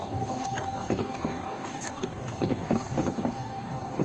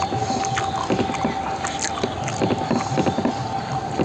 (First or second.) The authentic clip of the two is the second